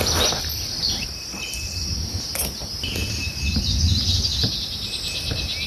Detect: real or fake real